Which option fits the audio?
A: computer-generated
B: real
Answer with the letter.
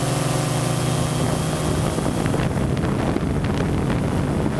B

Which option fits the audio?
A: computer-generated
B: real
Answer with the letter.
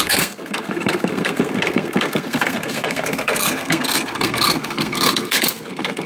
A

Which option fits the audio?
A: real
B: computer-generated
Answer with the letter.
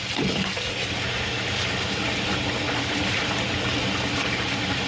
A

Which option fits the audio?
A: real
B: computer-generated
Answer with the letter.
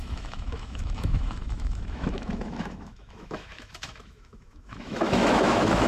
B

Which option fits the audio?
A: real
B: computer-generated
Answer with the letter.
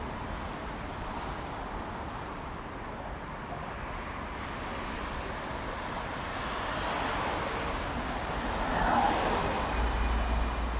A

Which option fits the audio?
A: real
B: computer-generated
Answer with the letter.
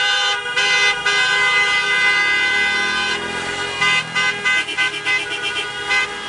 A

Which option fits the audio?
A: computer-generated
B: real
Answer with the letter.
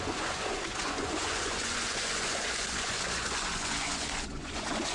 A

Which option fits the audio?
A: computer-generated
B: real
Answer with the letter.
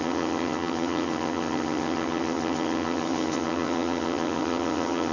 A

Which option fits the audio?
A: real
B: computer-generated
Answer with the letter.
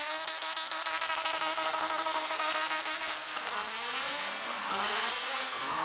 B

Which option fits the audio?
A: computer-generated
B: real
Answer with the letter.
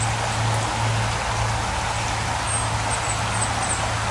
B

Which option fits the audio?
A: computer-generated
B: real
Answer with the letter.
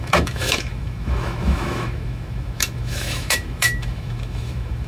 A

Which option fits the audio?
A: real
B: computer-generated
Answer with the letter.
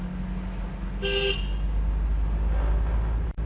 A